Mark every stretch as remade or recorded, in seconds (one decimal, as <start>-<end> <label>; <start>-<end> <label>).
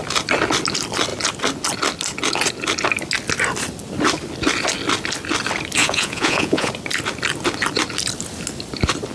0.0-5.8 recorded; 5.8-6.7 remade; 6.7-9.1 recorded